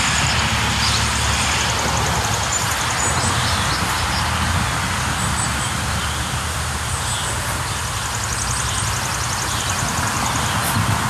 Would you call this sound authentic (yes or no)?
yes